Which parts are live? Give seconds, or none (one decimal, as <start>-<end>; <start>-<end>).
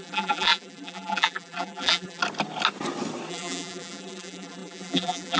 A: 2.2-3.3